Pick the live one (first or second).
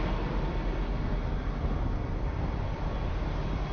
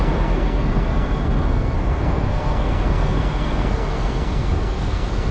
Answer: first